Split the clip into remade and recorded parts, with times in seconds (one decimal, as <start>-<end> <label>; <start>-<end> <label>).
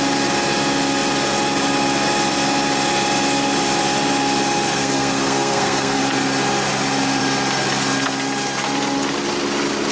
0.0-4.8 recorded; 4.8-6.0 remade; 6.0-9.9 recorded